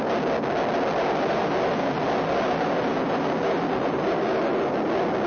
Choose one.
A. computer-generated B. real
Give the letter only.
B